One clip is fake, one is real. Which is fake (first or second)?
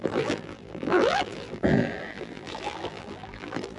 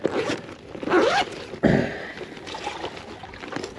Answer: first